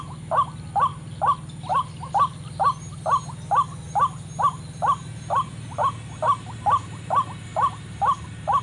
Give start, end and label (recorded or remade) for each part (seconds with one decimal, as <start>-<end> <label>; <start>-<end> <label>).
0.0-7.5 recorded; 7.5-8.6 remade